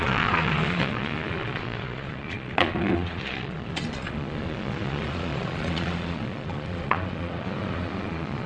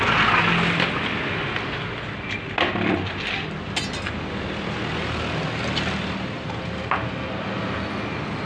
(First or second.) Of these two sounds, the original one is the second